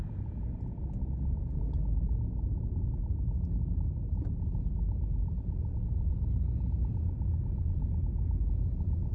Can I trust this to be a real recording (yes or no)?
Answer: yes